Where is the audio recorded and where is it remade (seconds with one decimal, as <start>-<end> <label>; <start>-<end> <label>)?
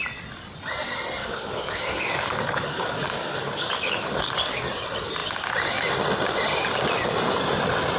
0.0-1.2 recorded; 1.2-4.6 remade; 4.6-8.0 recorded